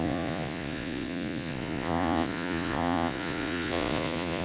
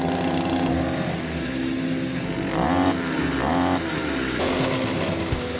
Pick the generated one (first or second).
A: first